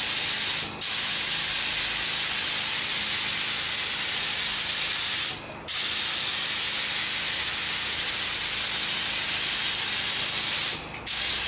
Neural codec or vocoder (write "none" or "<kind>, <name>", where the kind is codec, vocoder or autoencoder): none